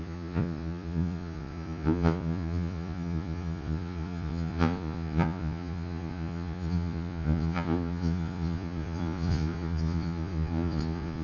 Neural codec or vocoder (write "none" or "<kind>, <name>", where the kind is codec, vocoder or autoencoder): vocoder, Vocos